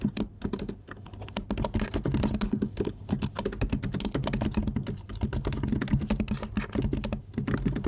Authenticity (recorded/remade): recorded